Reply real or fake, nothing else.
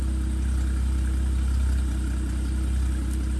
real